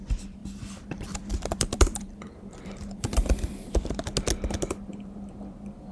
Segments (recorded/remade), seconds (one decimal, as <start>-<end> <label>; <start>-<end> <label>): 0.0-0.4 recorded; 0.4-3.9 remade; 3.9-5.9 recorded